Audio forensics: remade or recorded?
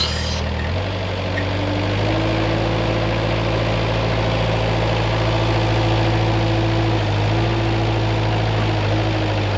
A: recorded